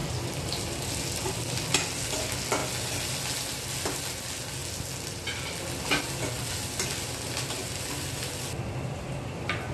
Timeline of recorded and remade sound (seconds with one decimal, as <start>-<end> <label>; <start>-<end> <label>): 0.0-9.7 recorded